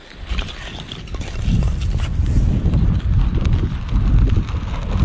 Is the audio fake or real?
real